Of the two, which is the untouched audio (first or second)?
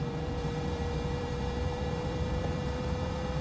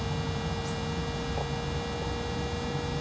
second